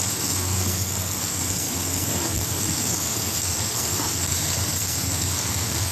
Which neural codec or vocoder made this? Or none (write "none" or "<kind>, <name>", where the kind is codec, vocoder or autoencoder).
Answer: codec, SNAC